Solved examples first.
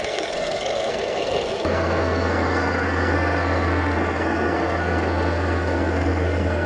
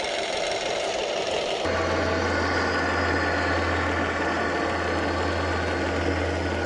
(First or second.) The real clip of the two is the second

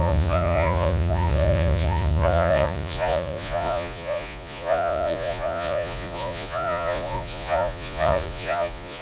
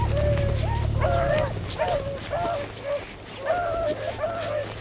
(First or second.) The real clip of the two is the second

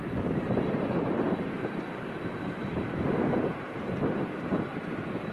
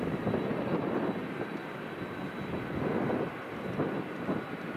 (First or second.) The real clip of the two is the second